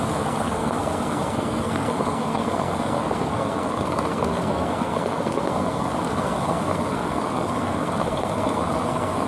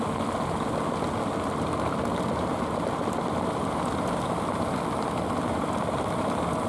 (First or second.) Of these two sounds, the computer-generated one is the first